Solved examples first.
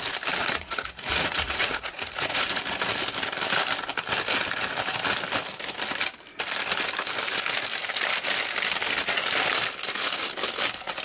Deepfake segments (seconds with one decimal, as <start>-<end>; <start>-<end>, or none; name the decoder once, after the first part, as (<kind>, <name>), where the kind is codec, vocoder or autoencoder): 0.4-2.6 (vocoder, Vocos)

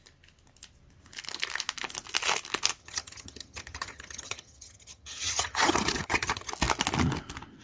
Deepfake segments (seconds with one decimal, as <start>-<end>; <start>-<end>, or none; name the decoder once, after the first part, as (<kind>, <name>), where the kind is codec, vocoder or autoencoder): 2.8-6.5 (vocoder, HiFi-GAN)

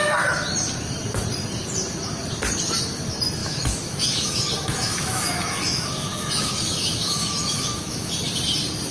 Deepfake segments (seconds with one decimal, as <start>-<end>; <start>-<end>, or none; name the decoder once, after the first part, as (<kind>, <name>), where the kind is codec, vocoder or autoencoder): 3.4-8.1 (autoencoder, DAC-VAE)